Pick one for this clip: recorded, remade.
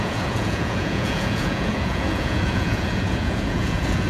remade